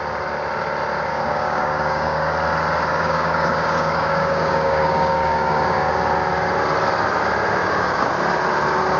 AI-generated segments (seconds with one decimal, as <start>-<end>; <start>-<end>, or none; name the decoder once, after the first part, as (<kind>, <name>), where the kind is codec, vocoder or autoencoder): 1.1-2.3 (codec, DAC); 2.9-5.9; 7.6-8.1